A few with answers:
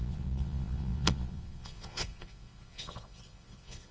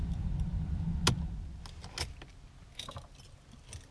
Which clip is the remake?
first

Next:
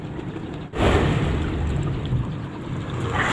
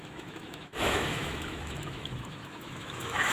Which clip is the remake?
second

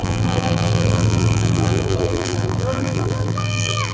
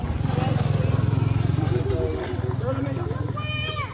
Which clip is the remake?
first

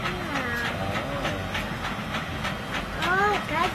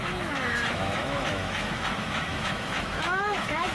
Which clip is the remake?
second